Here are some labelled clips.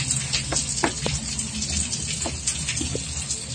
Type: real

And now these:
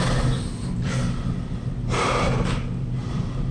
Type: real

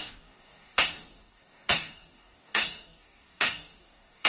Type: fake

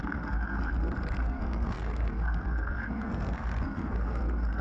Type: fake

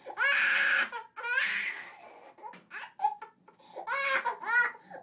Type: real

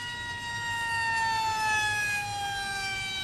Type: real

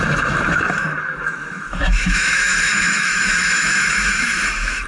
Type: fake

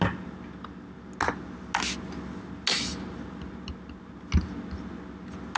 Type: real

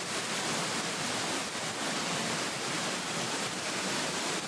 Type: real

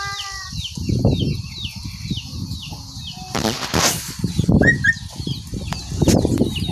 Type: real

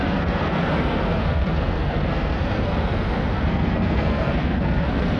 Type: fake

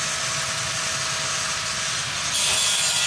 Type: real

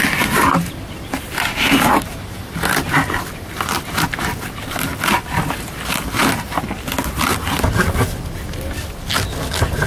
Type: real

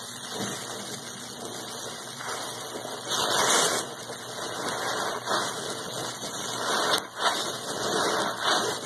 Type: real